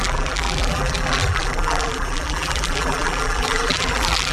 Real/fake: fake